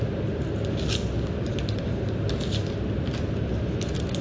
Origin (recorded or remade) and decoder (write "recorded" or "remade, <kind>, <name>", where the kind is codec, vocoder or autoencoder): recorded